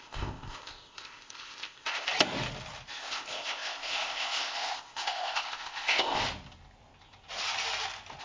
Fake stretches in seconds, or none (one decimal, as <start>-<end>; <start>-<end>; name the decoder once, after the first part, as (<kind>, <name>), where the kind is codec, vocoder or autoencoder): 0.0-2.1 (codec, ZipCodec); 2.9-6.2